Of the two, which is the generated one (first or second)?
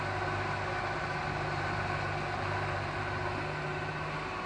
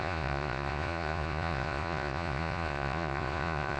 second